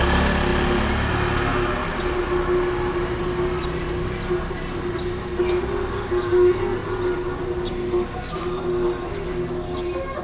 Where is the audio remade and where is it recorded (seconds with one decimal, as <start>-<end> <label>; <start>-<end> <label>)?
0.0-6.8 recorded; 6.8-7.4 remade; 7.4-10.2 recorded